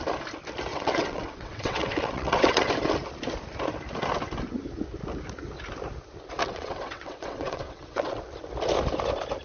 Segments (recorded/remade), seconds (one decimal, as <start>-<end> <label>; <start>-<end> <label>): 0.0-0.7 recorded; 0.7-2.7 remade; 2.7-6.4 recorded; 6.4-8.2 remade; 8.2-9.4 recorded